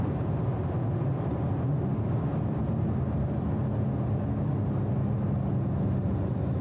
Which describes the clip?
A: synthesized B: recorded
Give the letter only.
B